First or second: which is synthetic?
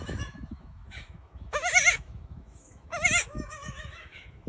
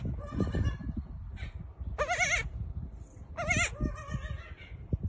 first